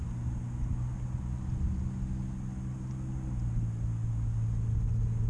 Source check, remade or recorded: recorded